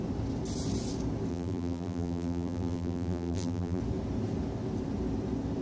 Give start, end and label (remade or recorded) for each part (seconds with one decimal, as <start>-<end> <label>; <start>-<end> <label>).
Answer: 0.0-1.3 recorded; 1.3-3.8 remade; 3.8-5.6 recorded